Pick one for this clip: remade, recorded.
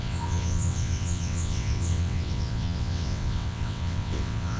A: remade